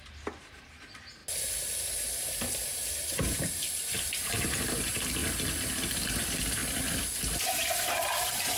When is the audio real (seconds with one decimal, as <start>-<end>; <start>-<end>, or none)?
1.2-1.8; 5.2-5.9; 6.6-7.4